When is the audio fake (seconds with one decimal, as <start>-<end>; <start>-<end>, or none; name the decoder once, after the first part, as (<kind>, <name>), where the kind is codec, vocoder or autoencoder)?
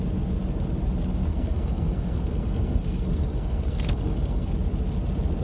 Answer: 1.3-4.5 (codec, SNAC)